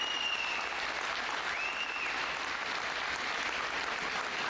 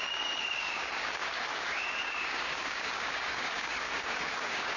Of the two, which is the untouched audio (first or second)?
first